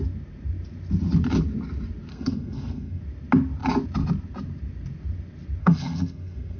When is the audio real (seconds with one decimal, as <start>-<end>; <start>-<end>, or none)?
0.0-2.1; 3.0-5.6